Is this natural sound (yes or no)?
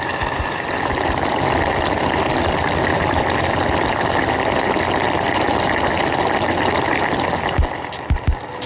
yes